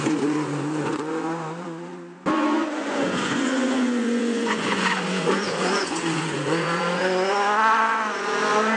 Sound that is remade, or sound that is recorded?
remade